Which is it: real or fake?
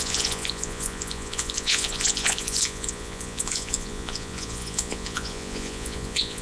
fake